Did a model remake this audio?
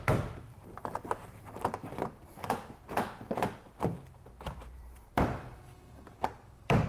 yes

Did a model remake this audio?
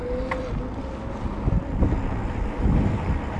no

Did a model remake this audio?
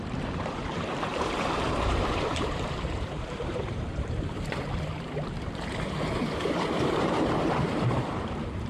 yes